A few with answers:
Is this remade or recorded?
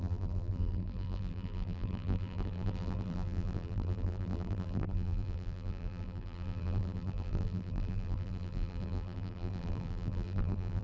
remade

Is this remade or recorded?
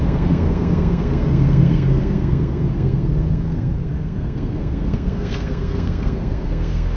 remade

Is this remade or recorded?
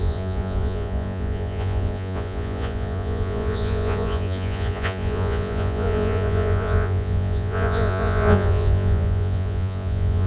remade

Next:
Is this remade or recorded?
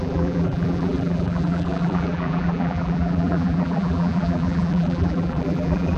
remade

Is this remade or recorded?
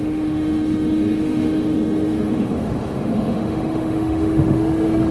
remade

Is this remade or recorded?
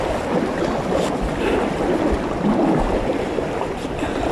recorded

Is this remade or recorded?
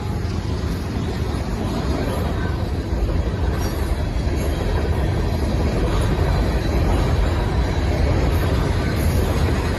recorded